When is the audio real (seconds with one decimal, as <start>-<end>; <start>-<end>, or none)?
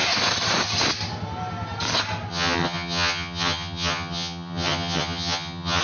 0.0-2.3